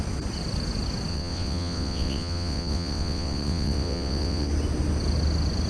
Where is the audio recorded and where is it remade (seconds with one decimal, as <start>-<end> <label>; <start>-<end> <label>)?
0.0-1.1 recorded; 1.1-4.5 remade; 4.5-5.7 recorded